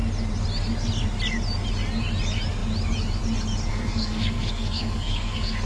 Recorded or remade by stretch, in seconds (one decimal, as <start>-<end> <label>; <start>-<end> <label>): 0.0-3.7 recorded; 3.7-5.7 remade